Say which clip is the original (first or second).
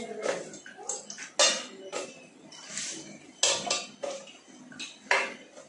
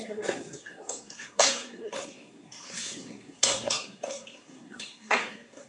first